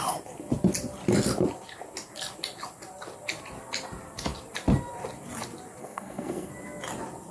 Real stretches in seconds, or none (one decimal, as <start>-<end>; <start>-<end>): 0.0-5.8; 6.5-7.3